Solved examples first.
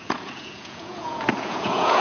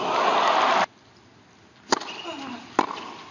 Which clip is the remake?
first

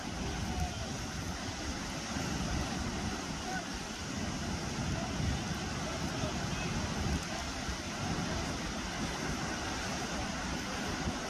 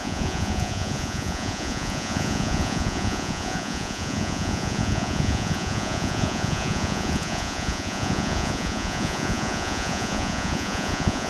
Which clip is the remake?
second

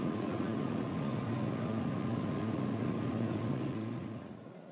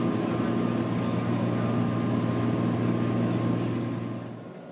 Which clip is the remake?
first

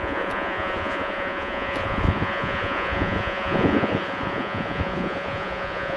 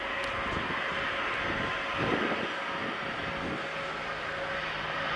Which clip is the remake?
first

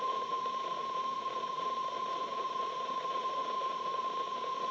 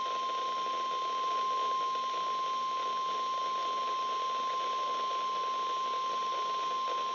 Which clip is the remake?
first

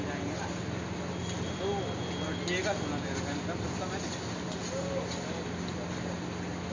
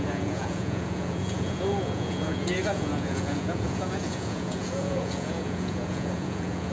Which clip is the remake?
second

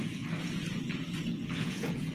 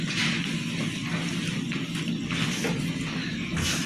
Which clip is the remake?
first